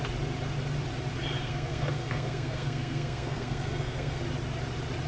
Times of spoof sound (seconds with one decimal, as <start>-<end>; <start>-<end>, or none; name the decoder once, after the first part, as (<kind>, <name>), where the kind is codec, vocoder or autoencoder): 1.4-4.2 (codec, SNAC)